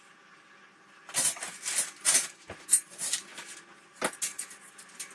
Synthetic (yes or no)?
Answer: no